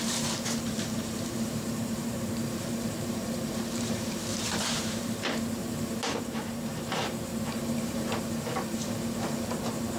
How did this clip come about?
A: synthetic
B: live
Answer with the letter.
A